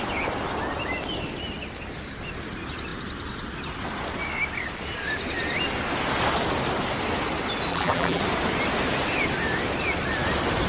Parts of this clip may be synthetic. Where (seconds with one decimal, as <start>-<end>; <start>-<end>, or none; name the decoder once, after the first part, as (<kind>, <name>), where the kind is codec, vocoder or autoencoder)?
7.7-8.2 (vocoder, BigVGAN v2)